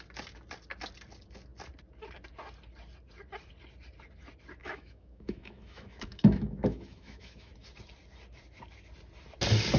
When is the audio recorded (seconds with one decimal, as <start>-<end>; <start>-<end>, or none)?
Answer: 0.0-4.6; 7.5-9.8